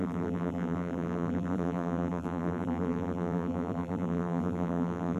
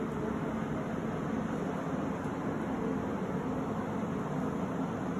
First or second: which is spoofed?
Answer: first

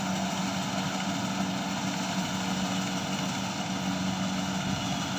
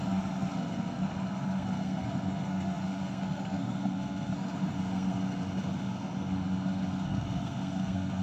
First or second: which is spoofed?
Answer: second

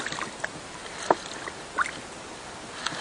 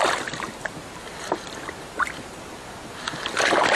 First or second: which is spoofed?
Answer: second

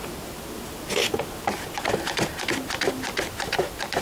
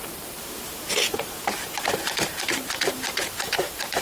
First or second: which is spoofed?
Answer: second